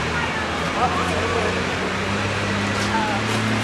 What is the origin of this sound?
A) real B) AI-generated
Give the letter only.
A